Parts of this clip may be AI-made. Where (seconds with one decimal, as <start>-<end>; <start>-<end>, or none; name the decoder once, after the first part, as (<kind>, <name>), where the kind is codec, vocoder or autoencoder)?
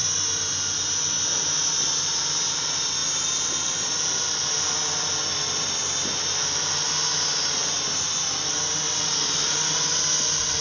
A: none